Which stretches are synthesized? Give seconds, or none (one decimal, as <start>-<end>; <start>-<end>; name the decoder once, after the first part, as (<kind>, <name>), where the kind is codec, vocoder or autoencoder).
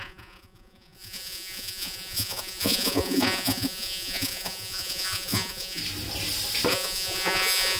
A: 0.0-5.8 (vocoder, Vocos); 6.7-7.8